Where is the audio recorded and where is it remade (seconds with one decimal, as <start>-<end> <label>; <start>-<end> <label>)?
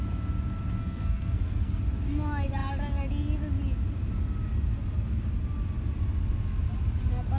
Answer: 0.0-0.8 recorded; 0.8-1.8 remade; 1.8-7.4 recorded